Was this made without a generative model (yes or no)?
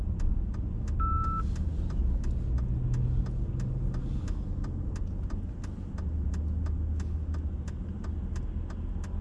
yes